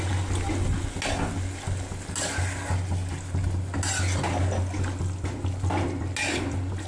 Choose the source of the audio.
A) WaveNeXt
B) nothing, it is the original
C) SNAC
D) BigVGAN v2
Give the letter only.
B